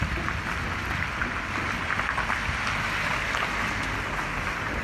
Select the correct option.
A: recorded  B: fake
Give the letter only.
A